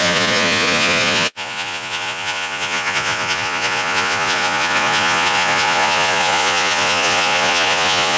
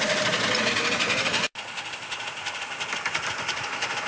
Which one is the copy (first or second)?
first